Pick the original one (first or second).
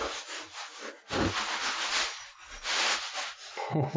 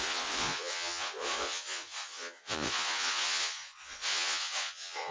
first